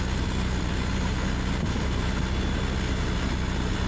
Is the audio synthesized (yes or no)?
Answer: no